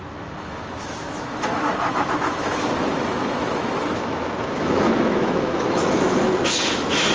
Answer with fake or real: fake